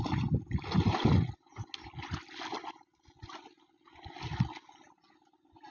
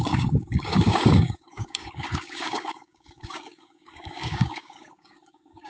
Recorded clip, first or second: first